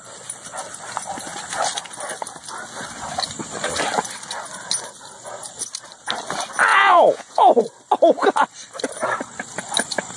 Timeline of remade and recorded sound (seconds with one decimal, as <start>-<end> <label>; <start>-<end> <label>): 0.0-6.7 recorded; 6.7-7.6 remade; 7.6-10.2 recorded